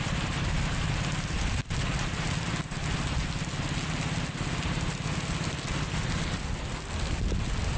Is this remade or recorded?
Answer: recorded